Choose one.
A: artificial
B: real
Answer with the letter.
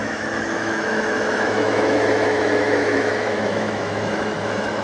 A